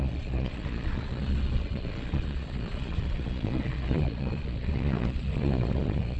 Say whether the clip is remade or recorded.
remade